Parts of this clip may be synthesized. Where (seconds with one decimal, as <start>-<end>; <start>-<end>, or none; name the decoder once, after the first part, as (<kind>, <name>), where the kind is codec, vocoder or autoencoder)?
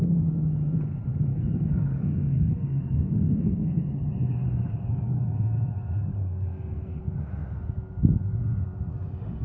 1.3-3.8 (codec, SNAC); 6.1-7.0